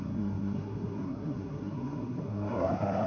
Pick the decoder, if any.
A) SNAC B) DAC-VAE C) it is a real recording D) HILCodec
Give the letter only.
A